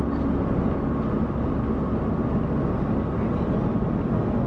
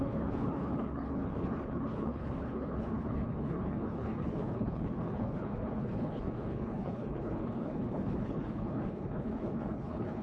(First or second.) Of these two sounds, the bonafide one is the first